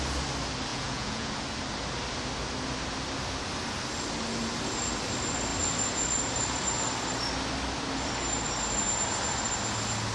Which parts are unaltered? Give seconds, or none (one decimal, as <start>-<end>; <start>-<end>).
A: 0.0-0.7; 1.3-10.1